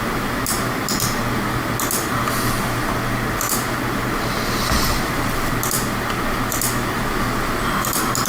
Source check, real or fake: real